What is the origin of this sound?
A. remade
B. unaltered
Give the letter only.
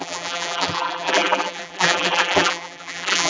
A